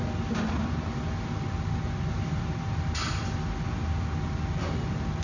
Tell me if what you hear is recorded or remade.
recorded